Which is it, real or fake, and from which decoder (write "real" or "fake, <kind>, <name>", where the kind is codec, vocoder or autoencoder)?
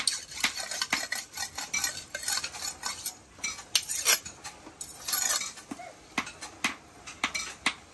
real